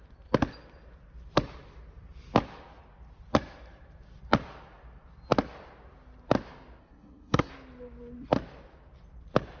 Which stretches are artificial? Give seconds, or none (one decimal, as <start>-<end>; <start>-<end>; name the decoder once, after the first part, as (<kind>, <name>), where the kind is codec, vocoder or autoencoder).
6.8-7.5 (codec, SNAC)